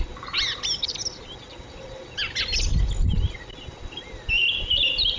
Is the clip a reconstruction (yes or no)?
no